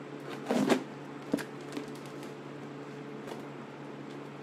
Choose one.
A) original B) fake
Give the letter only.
A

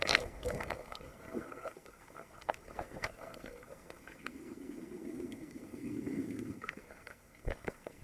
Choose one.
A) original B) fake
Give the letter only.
B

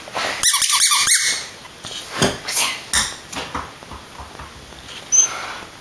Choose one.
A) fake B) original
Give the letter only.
B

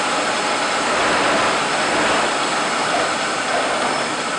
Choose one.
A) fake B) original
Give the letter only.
B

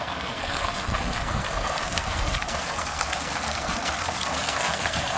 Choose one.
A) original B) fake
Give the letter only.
B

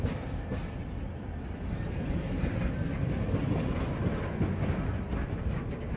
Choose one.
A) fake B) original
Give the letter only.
B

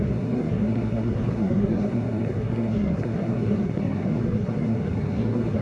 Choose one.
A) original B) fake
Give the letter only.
B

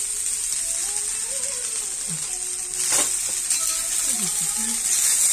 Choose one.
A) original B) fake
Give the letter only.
A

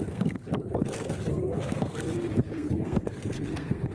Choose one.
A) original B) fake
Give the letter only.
B